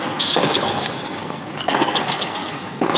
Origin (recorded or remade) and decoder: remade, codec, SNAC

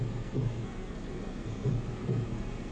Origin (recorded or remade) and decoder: remade, codec, SNAC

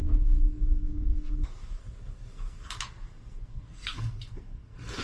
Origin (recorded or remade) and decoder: remade, codec, SNAC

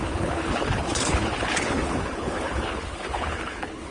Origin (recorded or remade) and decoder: remade, codec, HILCodec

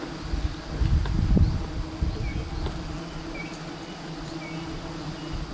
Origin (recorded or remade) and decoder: recorded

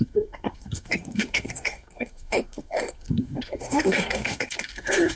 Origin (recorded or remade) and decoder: remade, codec, SNAC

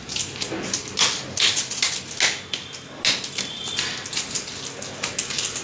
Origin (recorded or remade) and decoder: recorded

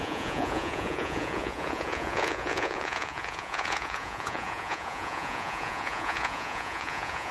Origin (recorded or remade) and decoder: remade, vocoder, Vocos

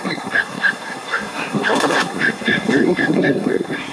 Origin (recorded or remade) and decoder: remade, codec, SNAC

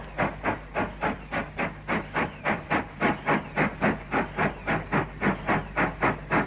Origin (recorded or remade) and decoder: recorded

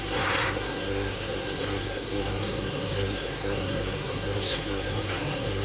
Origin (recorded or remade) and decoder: remade, codec, SNAC